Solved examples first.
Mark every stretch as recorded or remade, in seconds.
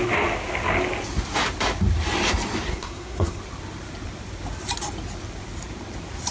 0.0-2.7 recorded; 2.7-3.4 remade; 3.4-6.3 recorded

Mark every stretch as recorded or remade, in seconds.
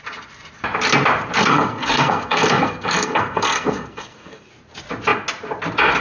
0.0-1.4 recorded; 1.4-4.5 remade; 4.5-6.0 recorded